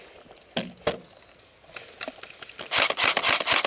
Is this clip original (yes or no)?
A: yes